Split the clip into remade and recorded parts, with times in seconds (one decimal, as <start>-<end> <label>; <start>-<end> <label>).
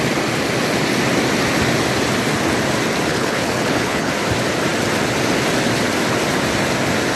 0.0-3.1 recorded; 3.1-4.1 remade; 4.1-7.2 recorded